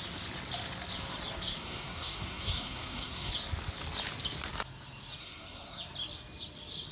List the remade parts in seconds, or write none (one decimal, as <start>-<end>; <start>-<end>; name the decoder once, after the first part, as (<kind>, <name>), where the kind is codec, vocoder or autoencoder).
1.6-3.3 (codec, SNAC); 5.2-5.8